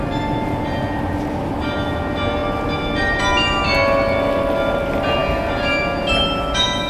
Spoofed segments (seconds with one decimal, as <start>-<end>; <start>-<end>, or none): none